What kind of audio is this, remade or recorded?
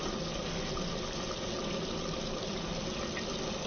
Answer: recorded